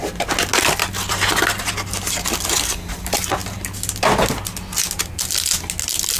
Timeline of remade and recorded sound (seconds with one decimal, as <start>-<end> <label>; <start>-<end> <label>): 0.0-6.2 recorded